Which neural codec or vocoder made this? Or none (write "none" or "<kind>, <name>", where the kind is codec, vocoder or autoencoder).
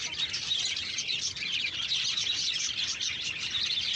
none